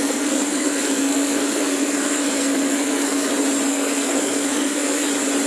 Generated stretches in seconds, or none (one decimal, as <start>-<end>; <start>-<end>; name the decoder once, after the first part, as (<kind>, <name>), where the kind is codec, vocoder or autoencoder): 0.0-3.3 (codec, SNAC); 3.7-5.1